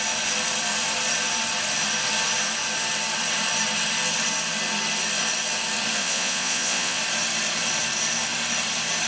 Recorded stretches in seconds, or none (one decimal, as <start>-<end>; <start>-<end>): 0.0-6.0; 7.0-9.1